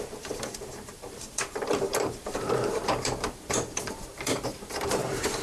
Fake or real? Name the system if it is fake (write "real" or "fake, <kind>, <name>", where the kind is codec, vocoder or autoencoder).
fake, vocoder, BigVGAN v2